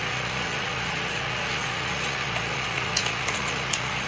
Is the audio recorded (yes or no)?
no